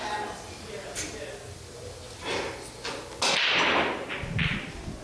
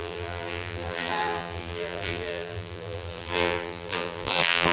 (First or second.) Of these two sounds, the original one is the first